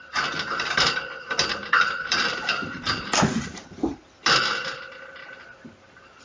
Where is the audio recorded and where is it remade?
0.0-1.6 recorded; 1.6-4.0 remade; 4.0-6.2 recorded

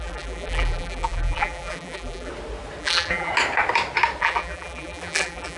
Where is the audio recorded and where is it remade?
0.0-2.3 remade; 2.3-2.8 recorded; 2.8-3.3 remade; 3.3-4.2 recorded; 4.2-5.6 remade

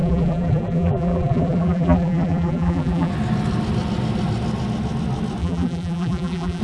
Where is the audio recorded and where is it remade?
0.0-3.1 remade; 3.1-5.4 recorded; 5.4-6.6 remade

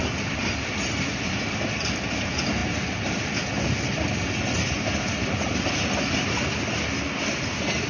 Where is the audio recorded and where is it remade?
0.0-7.9 recorded

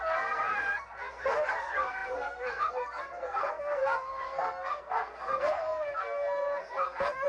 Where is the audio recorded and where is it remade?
0.0-7.3 remade

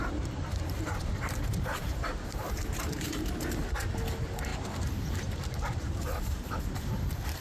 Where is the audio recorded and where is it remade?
0.0-3.6 remade; 3.6-4.5 recorded; 4.5-6.6 remade; 6.6-7.4 recorded